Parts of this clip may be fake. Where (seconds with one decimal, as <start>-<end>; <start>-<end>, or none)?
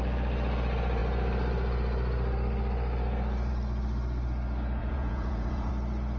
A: 4.8-5.7